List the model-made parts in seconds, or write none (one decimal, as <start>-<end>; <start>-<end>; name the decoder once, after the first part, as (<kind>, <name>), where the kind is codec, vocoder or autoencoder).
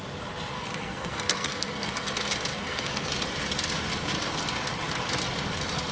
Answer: 0.5-1.9 (codec, SNAC); 2.5-3.1